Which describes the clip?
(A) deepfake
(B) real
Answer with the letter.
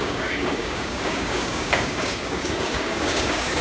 A